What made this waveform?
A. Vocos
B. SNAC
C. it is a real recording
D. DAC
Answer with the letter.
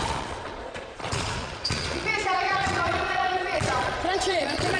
A